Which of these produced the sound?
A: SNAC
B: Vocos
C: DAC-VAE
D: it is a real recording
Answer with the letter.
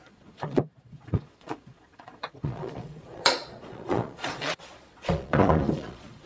B